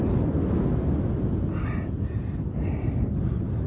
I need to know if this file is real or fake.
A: real